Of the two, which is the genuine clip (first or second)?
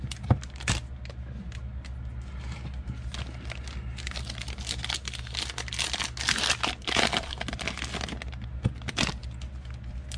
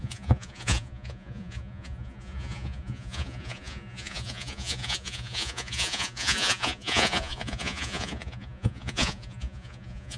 first